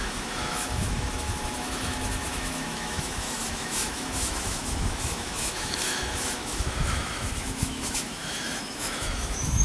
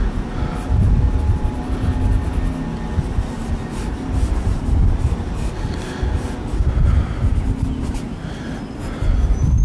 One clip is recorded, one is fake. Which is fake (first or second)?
first